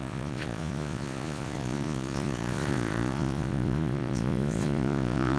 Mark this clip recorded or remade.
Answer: remade